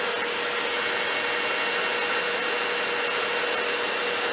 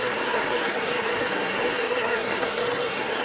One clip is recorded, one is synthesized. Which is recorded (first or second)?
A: first